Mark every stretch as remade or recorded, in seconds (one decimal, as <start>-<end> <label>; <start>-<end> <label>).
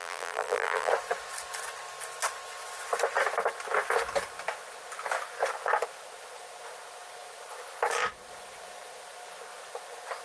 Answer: 0.0-0.9 remade; 0.9-10.2 recorded